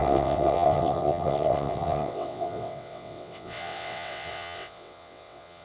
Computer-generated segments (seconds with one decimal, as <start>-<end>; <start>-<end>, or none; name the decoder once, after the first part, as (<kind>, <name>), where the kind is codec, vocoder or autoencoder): 0.0-5.6 (vocoder, WaveNeXt)